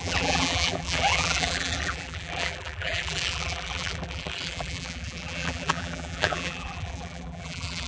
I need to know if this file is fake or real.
fake